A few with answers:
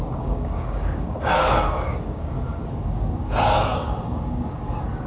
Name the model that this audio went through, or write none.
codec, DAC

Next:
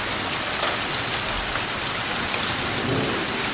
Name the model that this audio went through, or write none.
none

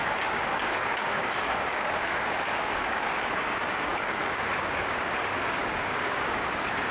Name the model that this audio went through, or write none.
codec, DAC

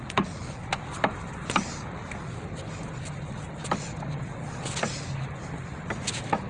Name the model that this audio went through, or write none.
none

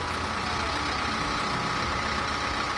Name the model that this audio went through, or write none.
none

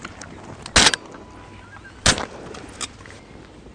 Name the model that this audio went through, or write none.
none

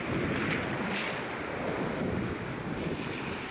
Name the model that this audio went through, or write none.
none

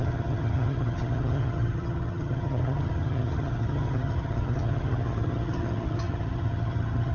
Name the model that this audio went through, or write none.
vocoder, HiFi-GAN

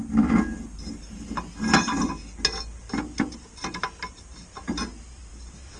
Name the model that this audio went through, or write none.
none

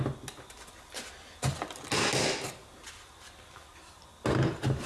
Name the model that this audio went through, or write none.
none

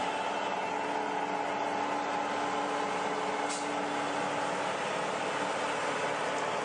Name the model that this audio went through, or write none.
none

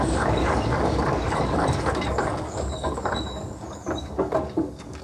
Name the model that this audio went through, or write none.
codec, DAC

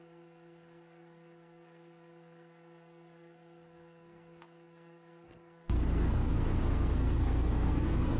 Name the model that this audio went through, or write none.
codec, SNAC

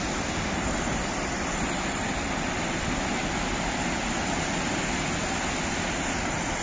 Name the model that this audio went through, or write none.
none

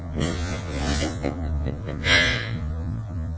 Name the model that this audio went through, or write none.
vocoder, Vocos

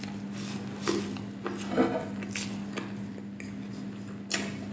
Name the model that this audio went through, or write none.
none